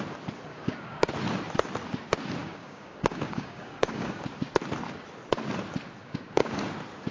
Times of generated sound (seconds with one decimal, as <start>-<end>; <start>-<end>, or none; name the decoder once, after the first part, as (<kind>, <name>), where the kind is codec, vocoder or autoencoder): 0.5-1.1 (codec, DAC); 2.4-4.2; 6.0-6.6